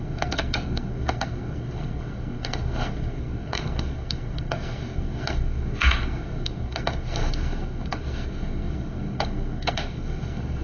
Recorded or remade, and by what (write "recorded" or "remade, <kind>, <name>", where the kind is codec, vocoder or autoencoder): remade, codec, SNAC